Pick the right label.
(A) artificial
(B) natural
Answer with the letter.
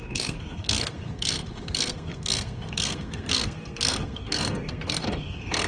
A